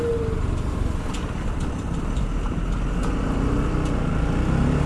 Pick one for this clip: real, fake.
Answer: real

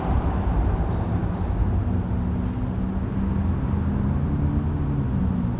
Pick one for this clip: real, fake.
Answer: real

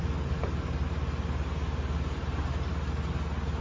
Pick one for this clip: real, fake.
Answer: real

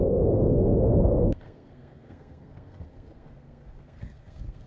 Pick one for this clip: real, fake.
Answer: fake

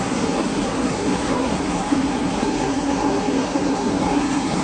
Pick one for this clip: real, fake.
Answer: fake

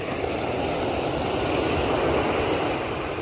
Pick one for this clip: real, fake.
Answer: real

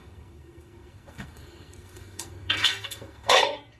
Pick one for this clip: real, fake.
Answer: fake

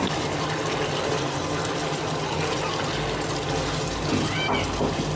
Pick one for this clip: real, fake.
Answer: real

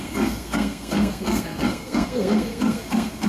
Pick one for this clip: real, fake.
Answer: fake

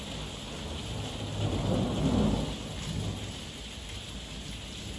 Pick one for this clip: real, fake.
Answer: real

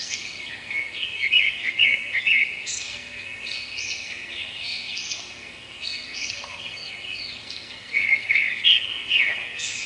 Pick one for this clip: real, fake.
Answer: fake